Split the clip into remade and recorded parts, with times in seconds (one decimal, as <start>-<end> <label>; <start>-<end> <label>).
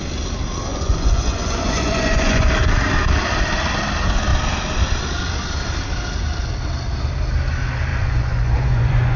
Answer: 0.0-0.7 recorded; 0.7-2.5 remade; 2.5-7.9 recorded; 7.9-9.2 remade